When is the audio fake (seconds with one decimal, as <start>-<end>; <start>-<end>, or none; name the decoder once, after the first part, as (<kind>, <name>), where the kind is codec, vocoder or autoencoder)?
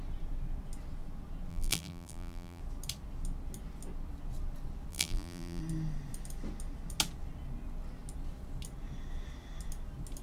1.5-2.6 (vocoder, BigVGAN v2); 4.9-5.6